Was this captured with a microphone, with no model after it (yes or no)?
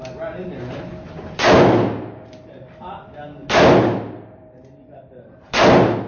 yes